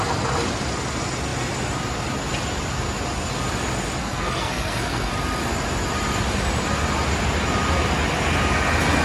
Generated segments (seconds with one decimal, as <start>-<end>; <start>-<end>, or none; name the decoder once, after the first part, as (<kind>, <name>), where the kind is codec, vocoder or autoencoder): 4.0-5.1 (codec, SNAC)